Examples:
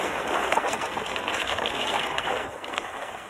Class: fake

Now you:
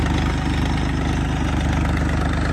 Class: real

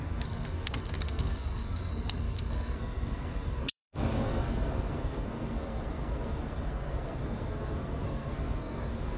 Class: fake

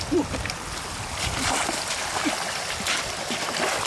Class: real